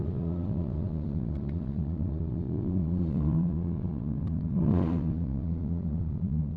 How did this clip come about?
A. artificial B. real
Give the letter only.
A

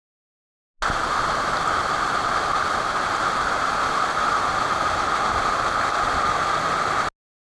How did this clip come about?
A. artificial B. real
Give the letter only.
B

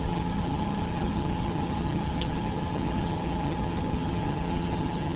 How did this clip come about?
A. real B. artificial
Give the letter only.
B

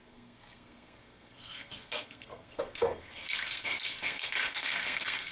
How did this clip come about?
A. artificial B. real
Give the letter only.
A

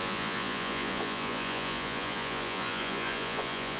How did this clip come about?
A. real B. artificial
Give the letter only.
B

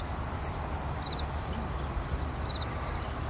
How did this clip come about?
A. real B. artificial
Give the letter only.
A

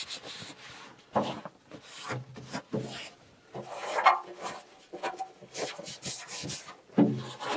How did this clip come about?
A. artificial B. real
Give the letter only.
B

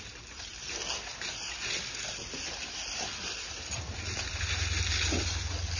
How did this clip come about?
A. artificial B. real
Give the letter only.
B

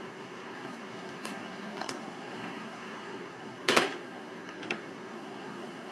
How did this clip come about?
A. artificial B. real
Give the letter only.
A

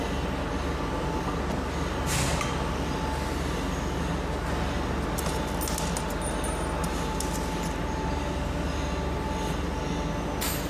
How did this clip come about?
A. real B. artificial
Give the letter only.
A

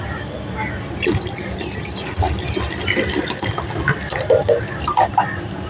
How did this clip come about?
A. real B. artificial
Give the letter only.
A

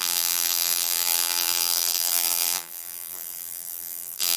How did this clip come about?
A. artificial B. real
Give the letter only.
A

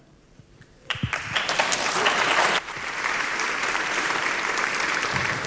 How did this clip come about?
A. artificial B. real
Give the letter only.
A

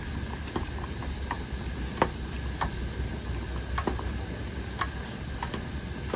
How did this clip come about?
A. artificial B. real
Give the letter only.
B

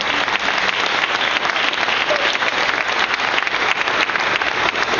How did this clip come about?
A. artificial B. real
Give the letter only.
B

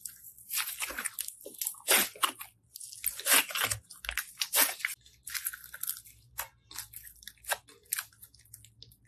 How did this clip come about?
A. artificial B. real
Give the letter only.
B